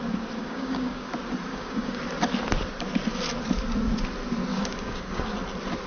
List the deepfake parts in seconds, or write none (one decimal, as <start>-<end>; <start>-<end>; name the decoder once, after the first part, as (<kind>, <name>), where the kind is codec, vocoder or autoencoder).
0.4-1.1 (codec, DAC); 1.5-2.0; 4.5-5.2

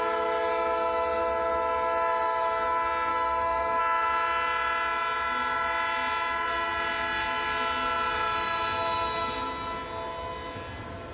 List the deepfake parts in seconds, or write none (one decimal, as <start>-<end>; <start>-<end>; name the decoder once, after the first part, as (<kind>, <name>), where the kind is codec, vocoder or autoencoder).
3.1-3.8 (codec, DAC)

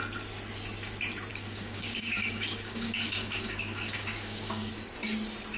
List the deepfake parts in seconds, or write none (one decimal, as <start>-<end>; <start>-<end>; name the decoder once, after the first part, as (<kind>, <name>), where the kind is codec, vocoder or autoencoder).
1.3-4.7 (codec, DAC)

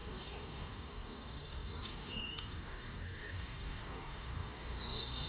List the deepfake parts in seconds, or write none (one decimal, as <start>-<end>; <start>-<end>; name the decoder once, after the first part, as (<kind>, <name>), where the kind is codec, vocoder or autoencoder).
0.0-5.3 (codec, DAC)

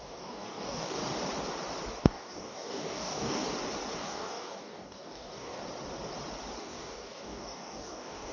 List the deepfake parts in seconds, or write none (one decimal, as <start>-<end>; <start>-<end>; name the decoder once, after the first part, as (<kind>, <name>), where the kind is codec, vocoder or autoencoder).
0.0-1.0 (codec, DAC); 2.0-3.4; 4.0-5.6; 6.6-8.3

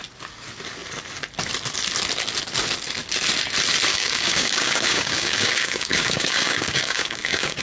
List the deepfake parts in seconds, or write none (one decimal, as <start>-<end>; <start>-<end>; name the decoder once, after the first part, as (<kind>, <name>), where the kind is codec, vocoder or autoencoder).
3.9-7.6 (codec, DAC)